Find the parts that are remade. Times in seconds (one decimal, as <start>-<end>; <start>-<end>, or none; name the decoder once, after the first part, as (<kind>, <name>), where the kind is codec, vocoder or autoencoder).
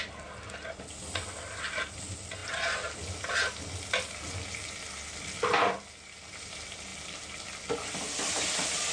none